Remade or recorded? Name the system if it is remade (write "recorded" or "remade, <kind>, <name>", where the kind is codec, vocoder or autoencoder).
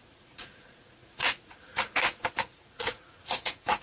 remade, vocoder, Vocos